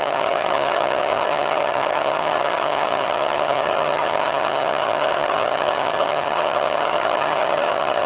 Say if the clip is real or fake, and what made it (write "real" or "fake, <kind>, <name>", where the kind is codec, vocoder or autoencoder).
fake, vocoder, HiFi-GAN